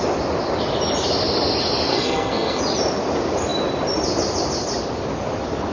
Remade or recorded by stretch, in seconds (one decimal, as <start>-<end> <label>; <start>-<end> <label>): 0.0-1.9 recorded; 1.9-2.6 remade; 2.6-5.7 recorded